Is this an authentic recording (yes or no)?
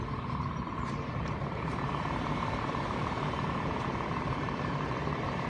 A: no